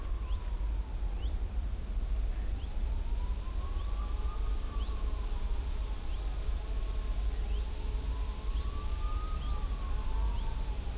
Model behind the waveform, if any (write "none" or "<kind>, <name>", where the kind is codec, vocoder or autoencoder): none